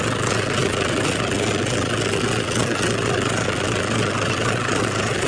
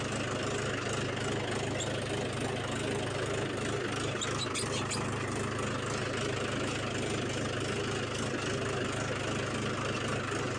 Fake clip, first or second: first